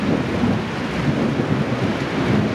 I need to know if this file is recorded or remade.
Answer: recorded